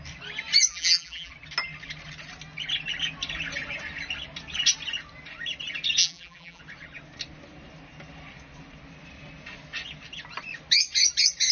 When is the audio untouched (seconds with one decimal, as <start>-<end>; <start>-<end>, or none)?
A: 0.0-0.7; 1.3-6.0; 6.6-11.5